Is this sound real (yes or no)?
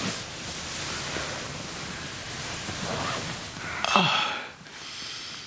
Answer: yes